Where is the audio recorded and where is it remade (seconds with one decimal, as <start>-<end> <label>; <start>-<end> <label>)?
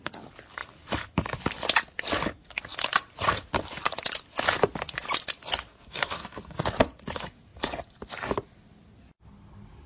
0.0-5.7 recorded; 5.7-6.6 remade; 6.6-9.9 recorded